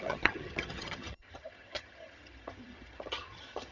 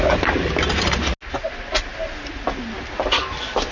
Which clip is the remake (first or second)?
first